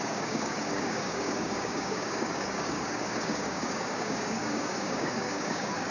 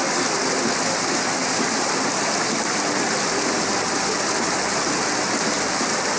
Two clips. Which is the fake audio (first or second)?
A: first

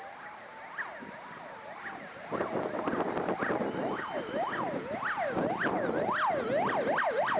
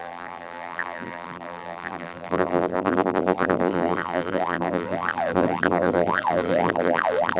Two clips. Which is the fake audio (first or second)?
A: second